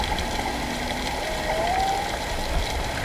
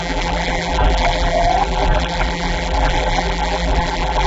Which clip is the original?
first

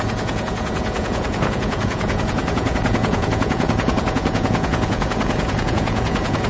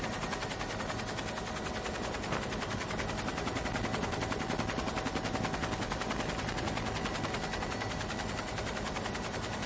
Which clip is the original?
second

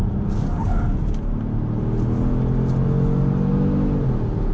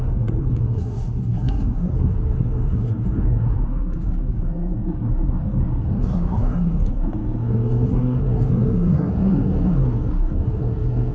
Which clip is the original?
first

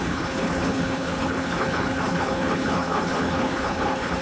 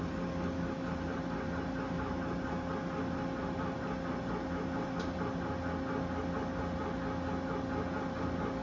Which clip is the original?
second